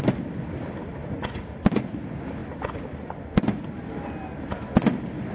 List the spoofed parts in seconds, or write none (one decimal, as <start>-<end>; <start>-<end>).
none

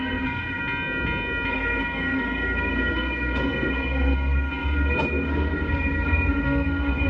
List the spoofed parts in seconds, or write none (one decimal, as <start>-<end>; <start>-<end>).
0.0-0.6; 1.5-7.1

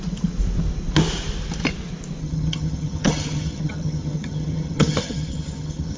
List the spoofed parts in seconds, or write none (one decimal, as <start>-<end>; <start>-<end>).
2.2-6.0